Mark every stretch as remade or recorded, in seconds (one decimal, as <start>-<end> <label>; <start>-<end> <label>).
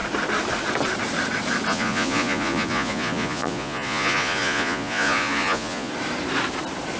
0.0-1.7 recorded; 1.7-5.9 remade; 5.9-7.0 recorded